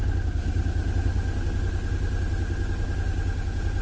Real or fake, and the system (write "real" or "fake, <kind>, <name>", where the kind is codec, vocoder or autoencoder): real